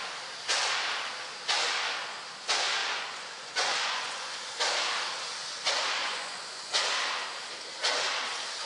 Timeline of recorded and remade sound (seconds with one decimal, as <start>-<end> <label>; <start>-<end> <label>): 0.0-2.8 recorded; 2.8-4.6 remade; 4.6-6.0 recorded; 6.0-6.8 remade; 6.8-8.7 recorded